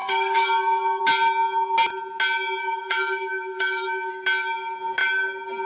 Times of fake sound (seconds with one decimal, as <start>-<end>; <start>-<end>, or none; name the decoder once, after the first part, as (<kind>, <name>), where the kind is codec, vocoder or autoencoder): 0.0-1.0 (codec, DAC); 2.6-4.1